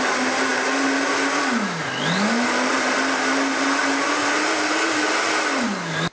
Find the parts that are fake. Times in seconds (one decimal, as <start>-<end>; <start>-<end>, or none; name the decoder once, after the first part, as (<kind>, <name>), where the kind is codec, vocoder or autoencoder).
none